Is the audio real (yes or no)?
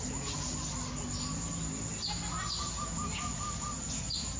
yes